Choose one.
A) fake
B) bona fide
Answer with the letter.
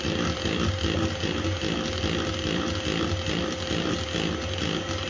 B